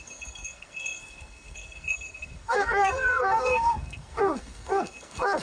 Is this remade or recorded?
remade